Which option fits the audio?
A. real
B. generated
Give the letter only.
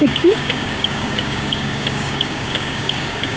B